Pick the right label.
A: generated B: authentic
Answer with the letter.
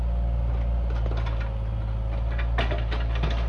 B